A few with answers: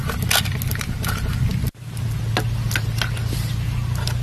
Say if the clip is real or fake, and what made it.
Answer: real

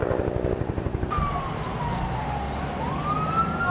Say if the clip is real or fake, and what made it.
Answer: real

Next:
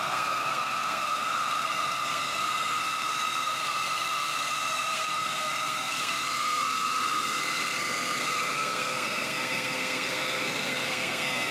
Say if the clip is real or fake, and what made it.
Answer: fake, codec, SNAC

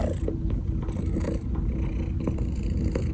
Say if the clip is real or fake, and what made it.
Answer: real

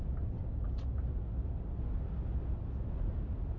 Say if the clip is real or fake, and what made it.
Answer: real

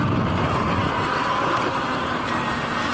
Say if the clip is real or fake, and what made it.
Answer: real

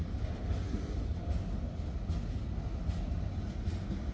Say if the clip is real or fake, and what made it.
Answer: real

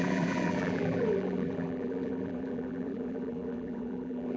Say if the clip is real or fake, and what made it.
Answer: fake, vocoder, BigVGAN v2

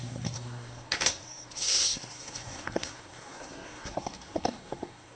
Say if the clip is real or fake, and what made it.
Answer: fake, codec, SNAC